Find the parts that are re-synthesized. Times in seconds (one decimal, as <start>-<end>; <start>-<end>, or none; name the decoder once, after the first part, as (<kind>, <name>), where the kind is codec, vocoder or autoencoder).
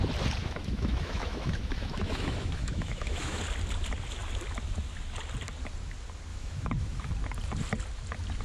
0.4-3.4 (autoencoder, DAC-VAE); 6.3-7.1